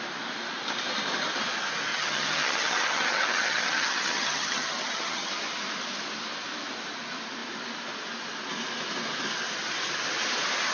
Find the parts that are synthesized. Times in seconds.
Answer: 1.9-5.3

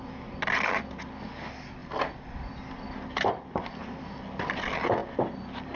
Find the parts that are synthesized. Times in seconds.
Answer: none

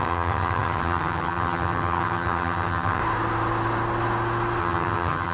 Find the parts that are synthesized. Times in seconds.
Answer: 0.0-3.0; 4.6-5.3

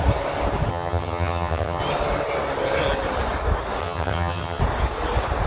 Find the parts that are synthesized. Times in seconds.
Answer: 0.7-1.8; 3.8-4.6

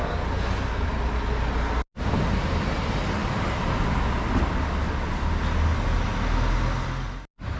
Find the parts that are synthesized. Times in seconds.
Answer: none

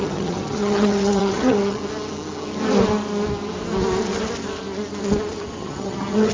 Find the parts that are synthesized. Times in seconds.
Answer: 0.0-1.8; 5.6-6.3